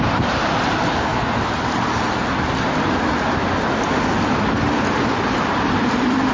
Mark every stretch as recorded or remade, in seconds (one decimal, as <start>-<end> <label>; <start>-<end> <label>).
0.0-1.1 remade; 1.1-4.9 recorded; 4.9-6.3 remade